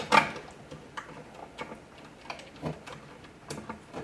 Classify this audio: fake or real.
real